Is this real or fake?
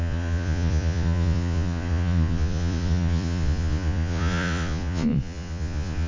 fake